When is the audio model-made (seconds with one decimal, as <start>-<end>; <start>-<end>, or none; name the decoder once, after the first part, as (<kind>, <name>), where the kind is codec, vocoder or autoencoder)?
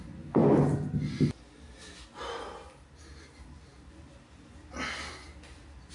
none